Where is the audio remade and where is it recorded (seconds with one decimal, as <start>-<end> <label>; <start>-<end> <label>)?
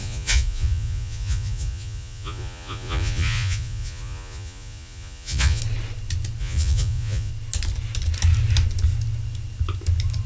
0.0-5.6 remade; 5.6-6.4 recorded; 6.4-7.3 remade; 7.3-10.3 recorded